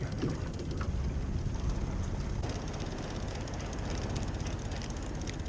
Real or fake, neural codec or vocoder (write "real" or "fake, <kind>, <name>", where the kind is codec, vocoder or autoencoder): real